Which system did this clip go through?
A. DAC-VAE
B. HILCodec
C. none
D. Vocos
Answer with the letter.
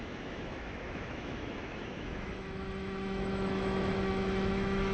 A